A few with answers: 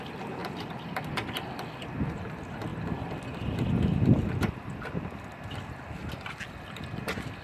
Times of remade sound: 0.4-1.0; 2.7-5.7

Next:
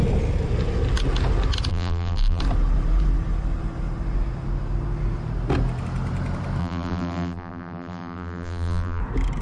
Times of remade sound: 1.7-2.4; 6.6-9.0

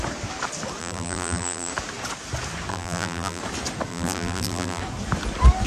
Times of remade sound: 0.8-1.7; 2.7-3.4; 3.9-4.8